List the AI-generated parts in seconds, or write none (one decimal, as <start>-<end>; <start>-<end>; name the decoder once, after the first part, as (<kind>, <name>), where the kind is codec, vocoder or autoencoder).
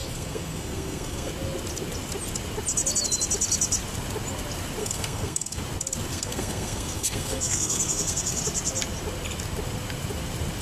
0.0-1.3 (codec, SNAC); 4.8-5.6; 6.1-8.4